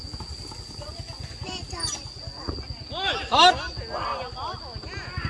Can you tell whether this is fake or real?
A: real